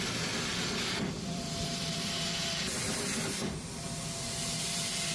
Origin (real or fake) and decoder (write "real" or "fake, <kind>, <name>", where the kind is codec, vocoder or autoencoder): fake, vocoder, BigVGAN v2